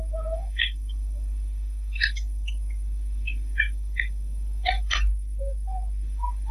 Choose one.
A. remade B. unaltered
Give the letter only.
A